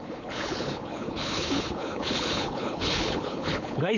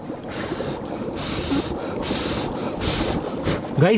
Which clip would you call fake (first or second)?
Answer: first